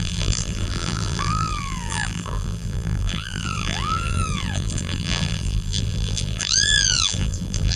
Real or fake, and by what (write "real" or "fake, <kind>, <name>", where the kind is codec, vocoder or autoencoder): fake, vocoder, BigVGAN v2